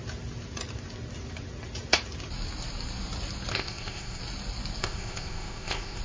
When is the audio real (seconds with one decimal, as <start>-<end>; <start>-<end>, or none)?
0.0-3.5; 4.2-4.8